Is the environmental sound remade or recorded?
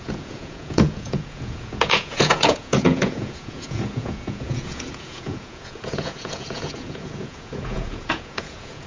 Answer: remade